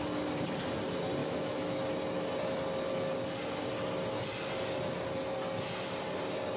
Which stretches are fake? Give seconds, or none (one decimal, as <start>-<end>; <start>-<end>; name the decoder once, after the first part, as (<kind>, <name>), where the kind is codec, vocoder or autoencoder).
1.2-1.8 (autoencoder, DAC-VAE)